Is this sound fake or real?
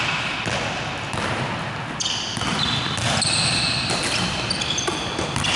real